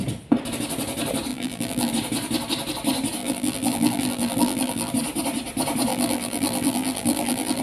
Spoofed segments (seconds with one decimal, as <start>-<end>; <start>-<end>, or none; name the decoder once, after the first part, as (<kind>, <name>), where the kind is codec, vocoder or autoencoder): 1.3-1.9 (vocoder, BigVGAN v2); 3.2-4.9; 5.9-7.6